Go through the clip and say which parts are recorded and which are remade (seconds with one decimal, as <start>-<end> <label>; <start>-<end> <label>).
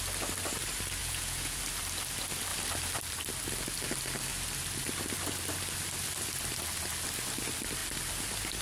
0.0-1.0 recorded; 1.0-1.6 remade; 1.6-8.6 recorded